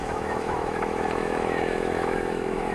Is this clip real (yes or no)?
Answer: no